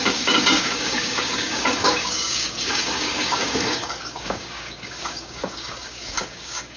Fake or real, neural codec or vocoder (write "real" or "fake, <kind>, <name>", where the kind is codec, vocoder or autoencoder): fake, codec, DAC